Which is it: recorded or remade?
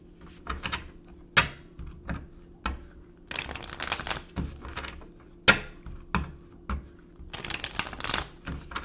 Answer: recorded